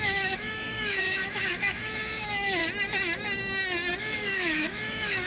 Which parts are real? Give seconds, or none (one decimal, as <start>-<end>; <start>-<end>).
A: 2.6-4.0